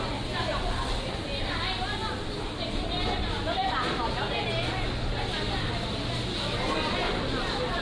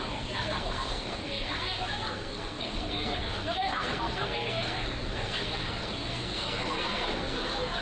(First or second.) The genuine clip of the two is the first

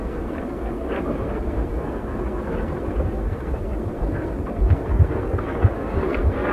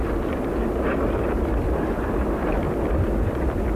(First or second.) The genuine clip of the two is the second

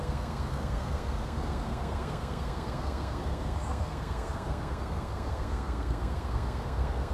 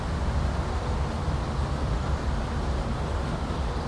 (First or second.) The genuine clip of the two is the second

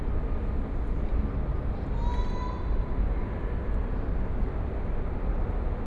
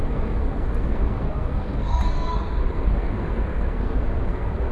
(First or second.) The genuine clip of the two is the first